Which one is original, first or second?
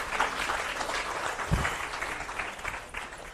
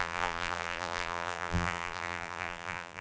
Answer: first